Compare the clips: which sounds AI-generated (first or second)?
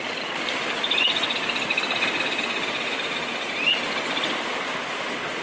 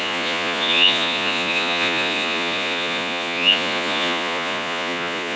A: second